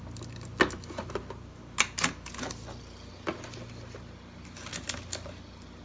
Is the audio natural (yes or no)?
yes